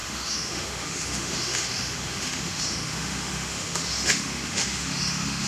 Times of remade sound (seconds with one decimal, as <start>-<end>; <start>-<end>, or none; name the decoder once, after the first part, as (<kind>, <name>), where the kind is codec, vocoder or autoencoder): 0.0-5.5 (autoencoder, DAC-VAE)